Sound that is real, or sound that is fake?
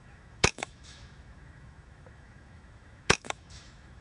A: fake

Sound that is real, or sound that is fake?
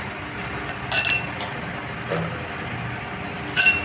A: real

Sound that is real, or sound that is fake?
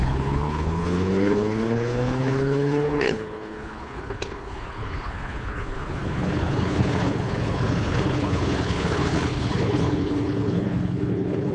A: fake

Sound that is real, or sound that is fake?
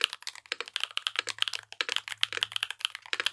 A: real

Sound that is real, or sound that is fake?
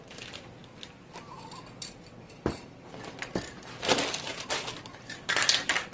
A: real